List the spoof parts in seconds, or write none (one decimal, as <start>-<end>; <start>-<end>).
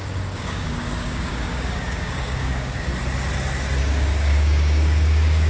0.0-2.9; 3.8-5.5